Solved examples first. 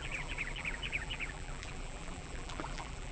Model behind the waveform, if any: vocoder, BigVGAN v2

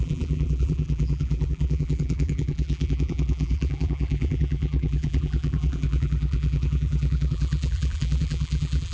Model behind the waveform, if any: vocoder, BigVGAN v2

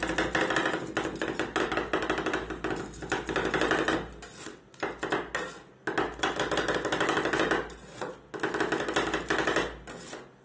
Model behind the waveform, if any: none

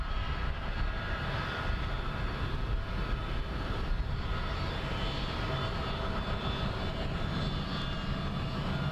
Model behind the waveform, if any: none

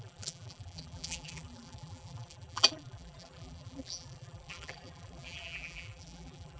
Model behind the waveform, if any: vocoder, BigVGAN v2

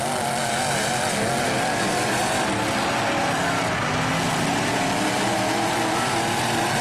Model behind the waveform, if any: none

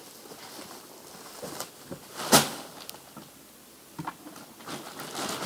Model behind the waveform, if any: none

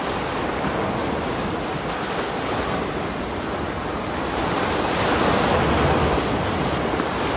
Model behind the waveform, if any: none